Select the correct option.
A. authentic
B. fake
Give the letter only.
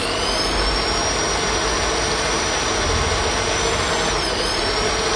A